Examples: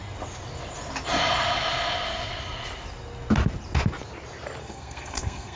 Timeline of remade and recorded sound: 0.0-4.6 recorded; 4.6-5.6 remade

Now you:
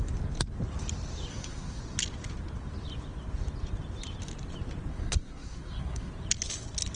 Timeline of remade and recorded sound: 0.0-1.3 recorded; 1.3-1.8 remade; 1.8-4.9 recorded; 4.9-6.1 remade; 6.1-7.0 recorded

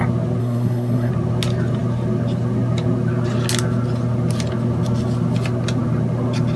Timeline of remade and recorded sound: 0.0-0.4 recorded; 0.4-1.1 remade; 1.1-6.6 recorded

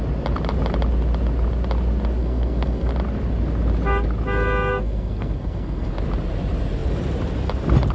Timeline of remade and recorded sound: 0.0-2.2 recorded; 2.2-2.9 remade; 2.9-4.7 recorded; 4.7-5.9 remade; 5.9-7.9 recorded